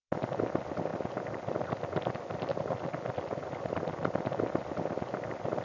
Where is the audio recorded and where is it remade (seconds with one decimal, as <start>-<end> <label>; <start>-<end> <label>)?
0.0-5.6 recorded